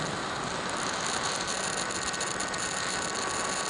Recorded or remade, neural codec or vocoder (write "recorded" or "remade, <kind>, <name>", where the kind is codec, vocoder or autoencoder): remade, vocoder, BigVGAN v2